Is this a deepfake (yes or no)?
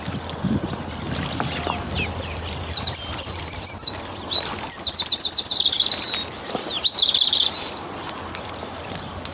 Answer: no